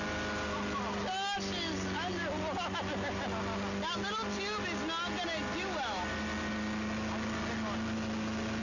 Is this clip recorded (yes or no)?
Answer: yes